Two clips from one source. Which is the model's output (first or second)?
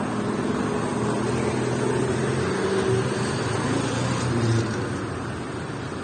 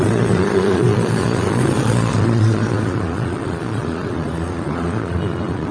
second